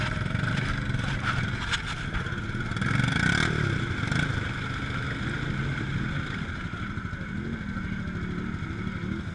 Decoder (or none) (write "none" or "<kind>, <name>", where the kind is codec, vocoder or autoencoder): none